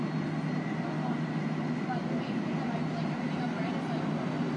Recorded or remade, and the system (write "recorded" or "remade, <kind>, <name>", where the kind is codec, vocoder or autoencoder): recorded